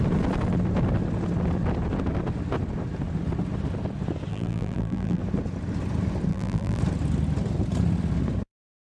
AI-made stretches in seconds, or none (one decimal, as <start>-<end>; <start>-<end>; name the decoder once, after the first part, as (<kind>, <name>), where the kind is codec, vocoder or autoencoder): 4.3-5.2 (vocoder, BigVGAN v2); 6.3-6.8